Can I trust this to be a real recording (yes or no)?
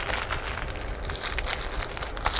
yes